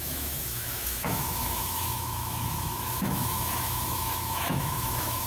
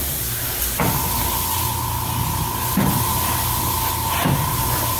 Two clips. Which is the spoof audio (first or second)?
first